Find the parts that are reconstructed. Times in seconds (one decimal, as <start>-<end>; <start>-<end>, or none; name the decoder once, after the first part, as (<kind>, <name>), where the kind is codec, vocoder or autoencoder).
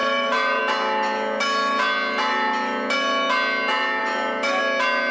0.0-0.6 (vocoder, BigVGAN v2); 4.0-4.6